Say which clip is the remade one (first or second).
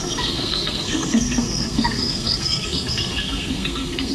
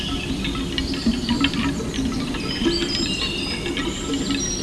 first